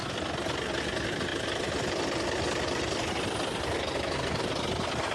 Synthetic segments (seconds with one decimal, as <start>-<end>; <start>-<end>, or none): none